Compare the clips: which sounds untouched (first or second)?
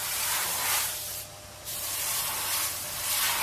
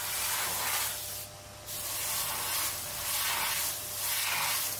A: second